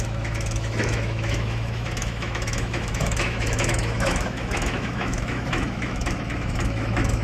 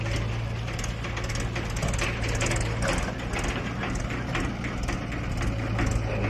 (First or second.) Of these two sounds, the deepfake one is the first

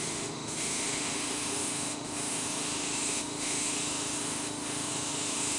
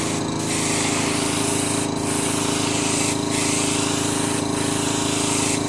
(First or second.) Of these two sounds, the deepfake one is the first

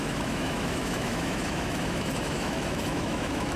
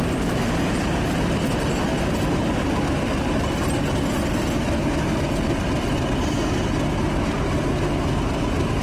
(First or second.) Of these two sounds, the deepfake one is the first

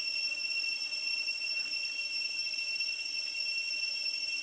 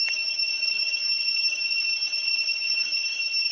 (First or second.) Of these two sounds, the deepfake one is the second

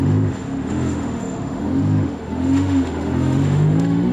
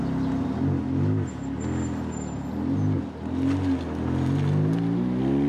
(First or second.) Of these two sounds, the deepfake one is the first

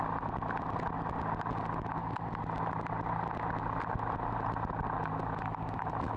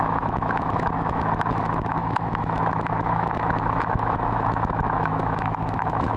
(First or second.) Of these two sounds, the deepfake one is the second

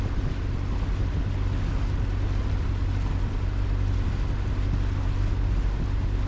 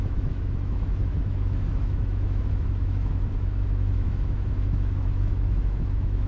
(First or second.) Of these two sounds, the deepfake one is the second